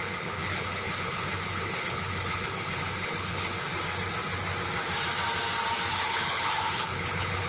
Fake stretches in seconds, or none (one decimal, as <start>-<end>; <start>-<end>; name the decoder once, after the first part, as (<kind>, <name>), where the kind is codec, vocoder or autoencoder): 0.0-3.7 (codec, HILCodec); 5.9-7.5